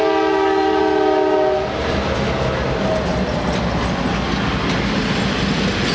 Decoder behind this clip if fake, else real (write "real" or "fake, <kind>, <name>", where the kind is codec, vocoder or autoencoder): real